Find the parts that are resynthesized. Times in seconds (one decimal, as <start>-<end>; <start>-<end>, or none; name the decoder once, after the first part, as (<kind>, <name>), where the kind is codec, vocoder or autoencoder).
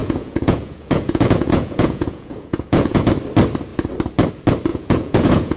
0.0-3.1 (vocoder, Vocos); 4.7-5.6